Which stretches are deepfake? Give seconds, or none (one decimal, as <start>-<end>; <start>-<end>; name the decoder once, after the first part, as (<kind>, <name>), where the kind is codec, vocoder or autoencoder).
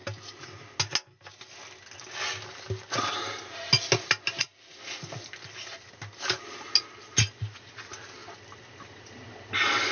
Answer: none